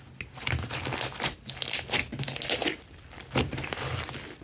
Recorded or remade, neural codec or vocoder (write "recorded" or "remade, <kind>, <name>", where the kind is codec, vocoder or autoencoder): recorded